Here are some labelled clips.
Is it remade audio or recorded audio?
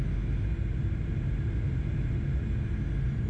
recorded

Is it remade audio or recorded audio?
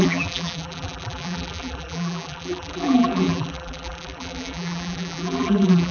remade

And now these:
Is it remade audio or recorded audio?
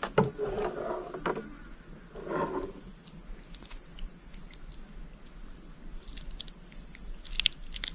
recorded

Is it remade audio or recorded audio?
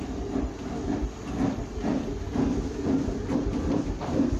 recorded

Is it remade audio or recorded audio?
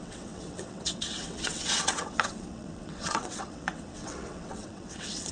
remade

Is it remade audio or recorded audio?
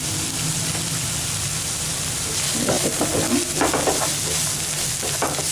recorded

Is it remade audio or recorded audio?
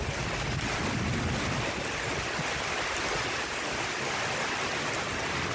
recorded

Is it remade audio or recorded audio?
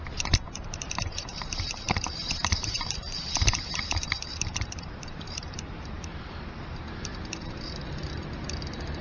remade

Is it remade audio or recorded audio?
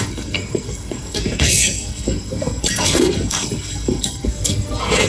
remade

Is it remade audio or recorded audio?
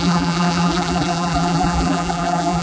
remade